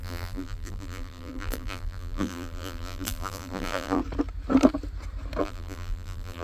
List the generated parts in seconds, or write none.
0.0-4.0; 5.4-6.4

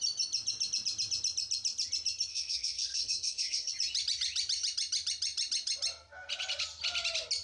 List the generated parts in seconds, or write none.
2.3-3.7

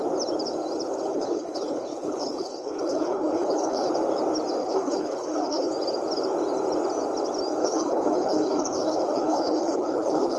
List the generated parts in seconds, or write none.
1.1-3.9; 4.6-5.7; 7.6-10.4

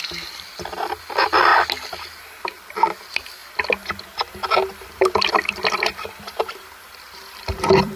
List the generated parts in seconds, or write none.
0.0-1.5; 2.2-3.4; 5.3-8.0